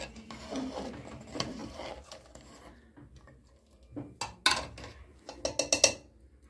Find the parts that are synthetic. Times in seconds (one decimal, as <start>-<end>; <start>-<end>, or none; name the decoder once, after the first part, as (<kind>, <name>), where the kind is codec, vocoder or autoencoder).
none